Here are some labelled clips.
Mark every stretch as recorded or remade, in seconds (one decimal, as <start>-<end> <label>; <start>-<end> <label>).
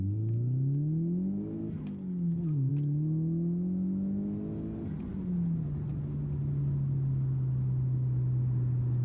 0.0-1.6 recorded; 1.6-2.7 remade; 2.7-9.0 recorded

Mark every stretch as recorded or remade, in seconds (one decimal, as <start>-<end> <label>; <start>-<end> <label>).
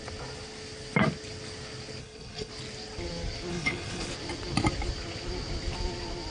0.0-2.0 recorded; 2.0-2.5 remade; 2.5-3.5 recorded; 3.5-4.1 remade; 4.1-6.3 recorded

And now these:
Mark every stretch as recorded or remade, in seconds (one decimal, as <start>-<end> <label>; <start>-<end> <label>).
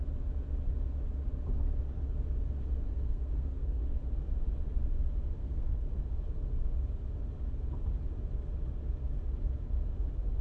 0.0-2.9 recorded; 2.9-3.8 remade; 3.8-5.4 recorded; 5.4-6.0 remade; 6.0-10.4 recorded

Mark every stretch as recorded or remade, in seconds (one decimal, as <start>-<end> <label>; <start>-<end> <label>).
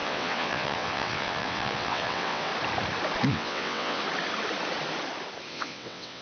0.0-2.5 remade; 2.5-3.3 recorded; 3.3-4.0 remade; 4.0-5.5 recorded; 5.5-6.2 remade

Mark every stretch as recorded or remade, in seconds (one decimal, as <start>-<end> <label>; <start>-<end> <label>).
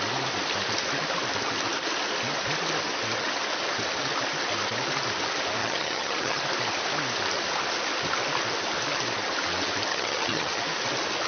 0.0-5.6 recorded; 5.6-6.4 remade; 6.4-9.9 recorded; 9.9-10.6 remade; 10.6-11.3 recorded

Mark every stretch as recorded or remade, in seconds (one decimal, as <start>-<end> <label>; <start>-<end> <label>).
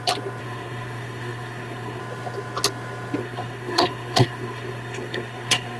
0.0-0.4 recorded; 0.4-2.0 remade; 2.0-3.2 recorded; 3.2-5.8 remade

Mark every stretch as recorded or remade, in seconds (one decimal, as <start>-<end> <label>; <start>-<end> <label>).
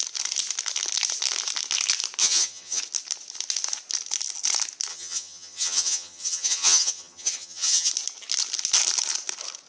0.0-2.2 recorded; 2.2-2.8 remade; 2.8-4.9 recorded; 4.9-7.9 remade; 7.9-9.7 recorded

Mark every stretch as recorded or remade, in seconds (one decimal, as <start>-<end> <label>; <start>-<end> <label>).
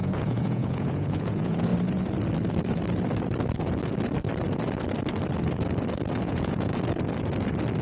0.0-1.7 remade; 1.7-6.2 recorded; 6.2-6.7 remade; 6.7-7.8 recorded